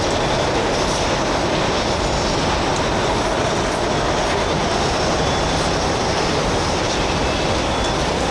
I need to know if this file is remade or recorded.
recorded